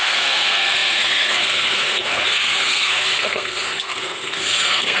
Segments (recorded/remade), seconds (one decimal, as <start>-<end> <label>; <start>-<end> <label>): 0.0-5.0 remade